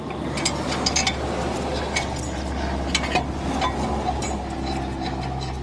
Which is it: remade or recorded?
recorded